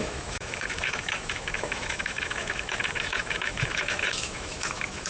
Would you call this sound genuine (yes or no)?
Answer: no